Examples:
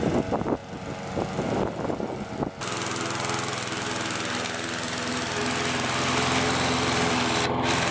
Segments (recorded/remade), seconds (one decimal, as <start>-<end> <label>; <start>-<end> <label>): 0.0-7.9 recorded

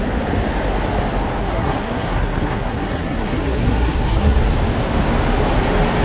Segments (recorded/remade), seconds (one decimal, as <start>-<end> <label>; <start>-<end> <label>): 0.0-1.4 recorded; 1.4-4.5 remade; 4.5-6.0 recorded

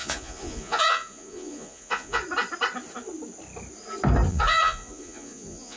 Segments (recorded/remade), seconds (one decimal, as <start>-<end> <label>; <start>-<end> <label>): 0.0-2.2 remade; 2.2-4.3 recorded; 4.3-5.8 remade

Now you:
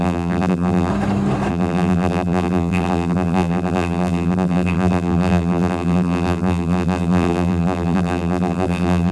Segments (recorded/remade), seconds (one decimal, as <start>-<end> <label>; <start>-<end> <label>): 0.0-0.9 remade; 0.9-1.5 recorded; 1.5-9.1 remade

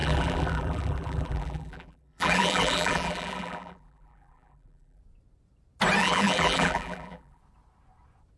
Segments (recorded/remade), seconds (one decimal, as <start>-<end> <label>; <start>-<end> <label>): 0.0-5.0 remade; 5.0-6.0 recorded; 6.0-7.4 remade; 7.4-8.4 recorded

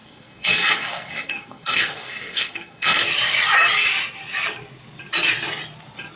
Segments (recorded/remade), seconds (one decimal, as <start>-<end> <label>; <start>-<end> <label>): 0.0-3.1 remade; 3.1-6.2 recorded

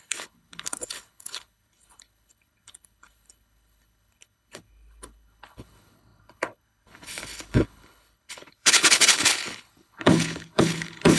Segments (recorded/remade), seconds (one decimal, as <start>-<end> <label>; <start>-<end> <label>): 0.0-11.2 remade

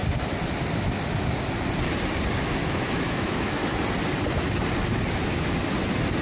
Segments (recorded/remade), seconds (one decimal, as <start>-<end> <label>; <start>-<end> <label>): 0.0-2.7 recorded; 2.7-3.6 remade; 3.6-6.2 recorded